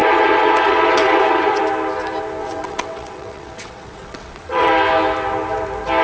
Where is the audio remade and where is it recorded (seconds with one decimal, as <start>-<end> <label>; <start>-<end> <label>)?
0.0-1.6 remade; 1.6-2.4 recorded; 2.4-4.7 remade; 4.7-6.0 recorded